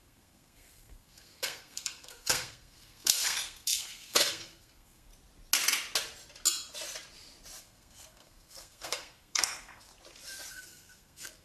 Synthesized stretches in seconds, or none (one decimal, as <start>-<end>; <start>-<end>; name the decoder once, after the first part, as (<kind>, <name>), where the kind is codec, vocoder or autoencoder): 0.0-5.1 (codec, SNAC); 7.6-9.9; 10.5-11.4